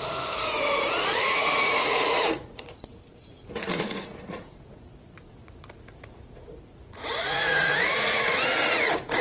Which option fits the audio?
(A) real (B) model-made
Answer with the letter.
B